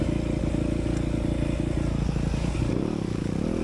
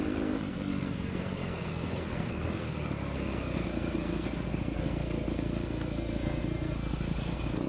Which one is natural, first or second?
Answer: first